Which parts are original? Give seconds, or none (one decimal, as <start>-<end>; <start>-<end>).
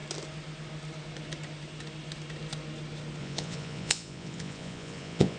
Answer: 0.0-3.2